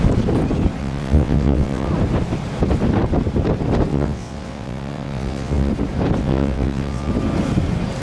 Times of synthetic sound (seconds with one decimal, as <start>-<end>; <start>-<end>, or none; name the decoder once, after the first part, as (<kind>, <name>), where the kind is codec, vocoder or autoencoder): 0.8-1.9 (vocoder, WaveNeXt); 3.9-5.7; 6.2-7.1